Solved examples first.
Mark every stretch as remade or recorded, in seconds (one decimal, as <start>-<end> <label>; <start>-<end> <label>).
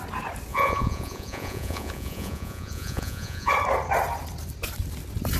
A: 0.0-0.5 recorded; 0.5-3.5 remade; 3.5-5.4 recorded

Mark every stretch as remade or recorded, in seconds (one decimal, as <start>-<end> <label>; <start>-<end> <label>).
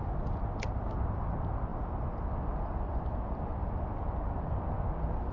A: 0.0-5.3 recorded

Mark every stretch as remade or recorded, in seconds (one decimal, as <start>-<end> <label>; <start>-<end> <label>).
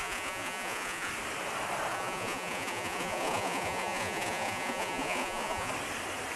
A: 0.0-1.1 remade; 1.1-1.9 recorded; 1.9-5.7 remade; 5.7-6.4 recorded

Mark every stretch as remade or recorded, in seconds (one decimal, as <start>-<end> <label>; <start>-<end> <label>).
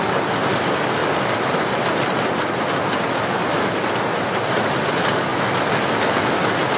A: 0.0-6.8 recorded